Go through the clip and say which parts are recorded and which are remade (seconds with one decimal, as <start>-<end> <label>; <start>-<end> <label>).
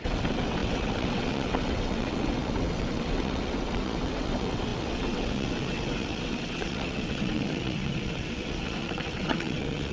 0.0-9.9 remade